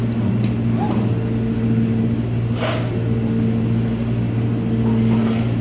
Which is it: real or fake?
real